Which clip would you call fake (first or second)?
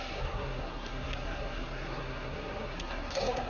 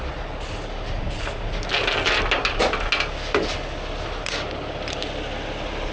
first